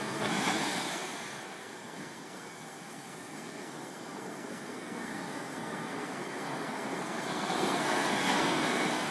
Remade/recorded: remade